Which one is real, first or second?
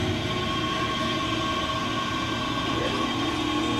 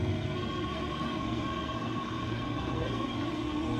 first